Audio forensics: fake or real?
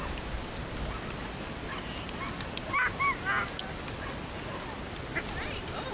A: real